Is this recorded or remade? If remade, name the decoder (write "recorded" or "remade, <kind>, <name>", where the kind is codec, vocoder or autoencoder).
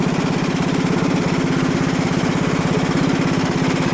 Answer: recorded